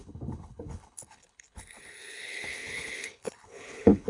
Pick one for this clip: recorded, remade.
remade